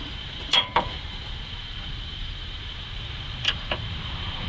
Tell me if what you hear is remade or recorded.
remade